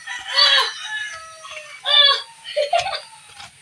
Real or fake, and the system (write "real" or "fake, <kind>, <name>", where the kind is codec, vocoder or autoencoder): real